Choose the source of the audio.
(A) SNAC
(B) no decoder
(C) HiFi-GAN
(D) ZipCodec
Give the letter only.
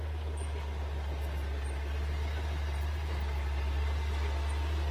B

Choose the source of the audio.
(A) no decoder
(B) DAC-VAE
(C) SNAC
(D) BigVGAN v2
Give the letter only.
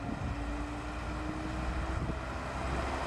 A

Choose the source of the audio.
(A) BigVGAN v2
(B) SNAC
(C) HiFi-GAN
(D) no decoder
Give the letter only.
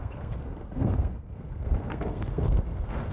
B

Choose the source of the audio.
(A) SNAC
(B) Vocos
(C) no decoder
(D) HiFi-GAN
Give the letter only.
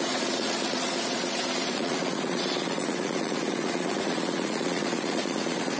B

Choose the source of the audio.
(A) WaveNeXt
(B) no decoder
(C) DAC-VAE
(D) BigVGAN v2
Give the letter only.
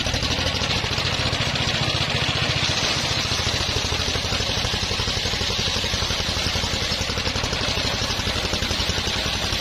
B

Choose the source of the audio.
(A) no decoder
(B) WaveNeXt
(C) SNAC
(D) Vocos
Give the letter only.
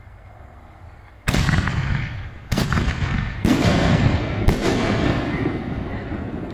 C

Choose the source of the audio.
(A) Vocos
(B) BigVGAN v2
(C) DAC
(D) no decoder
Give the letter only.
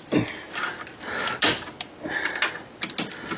D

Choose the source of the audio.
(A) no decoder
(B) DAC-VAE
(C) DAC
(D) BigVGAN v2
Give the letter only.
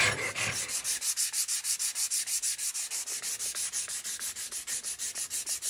A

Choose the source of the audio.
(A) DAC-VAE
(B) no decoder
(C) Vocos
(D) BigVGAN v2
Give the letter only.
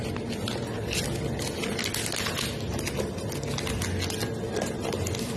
B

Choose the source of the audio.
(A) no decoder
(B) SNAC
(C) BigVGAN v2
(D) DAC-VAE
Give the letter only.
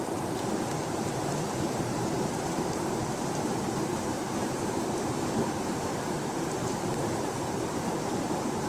C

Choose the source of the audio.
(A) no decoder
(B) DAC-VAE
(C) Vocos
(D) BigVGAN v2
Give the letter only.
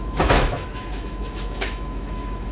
B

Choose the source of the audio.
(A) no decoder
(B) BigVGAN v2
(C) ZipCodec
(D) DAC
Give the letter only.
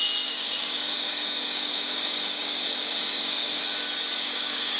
D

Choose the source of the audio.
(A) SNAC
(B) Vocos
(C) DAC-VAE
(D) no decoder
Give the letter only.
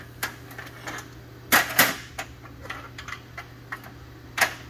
D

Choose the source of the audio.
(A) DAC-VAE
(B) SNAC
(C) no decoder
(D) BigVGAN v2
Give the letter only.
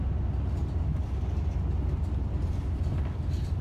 C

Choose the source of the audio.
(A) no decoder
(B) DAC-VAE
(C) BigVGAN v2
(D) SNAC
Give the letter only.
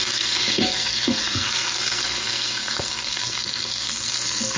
D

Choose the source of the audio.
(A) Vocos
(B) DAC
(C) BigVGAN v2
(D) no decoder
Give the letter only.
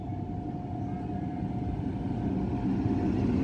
D